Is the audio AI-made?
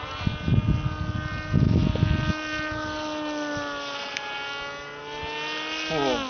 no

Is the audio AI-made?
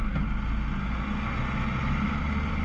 no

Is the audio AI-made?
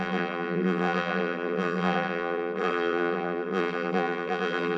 yes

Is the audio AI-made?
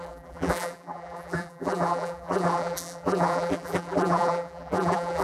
yes